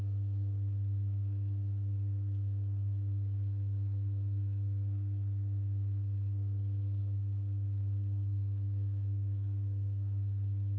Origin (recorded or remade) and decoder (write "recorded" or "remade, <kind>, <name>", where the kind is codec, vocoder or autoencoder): remade, codec, SNAC